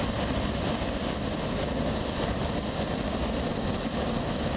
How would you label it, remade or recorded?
recorded